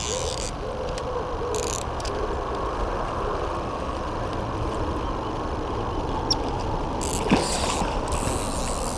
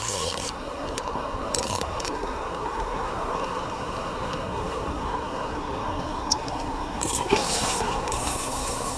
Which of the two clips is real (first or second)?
first